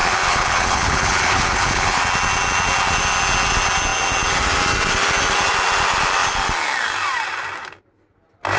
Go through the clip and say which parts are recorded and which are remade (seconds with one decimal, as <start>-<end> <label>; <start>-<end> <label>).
0.0-2.0 remade; 2.0-8.6 recorded